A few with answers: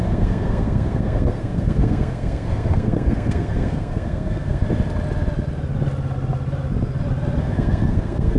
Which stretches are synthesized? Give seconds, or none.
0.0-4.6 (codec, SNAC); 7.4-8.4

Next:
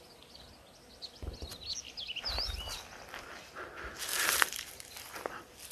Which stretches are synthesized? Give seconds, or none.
4.1-4.9 (vocoder, BigVGAN v2)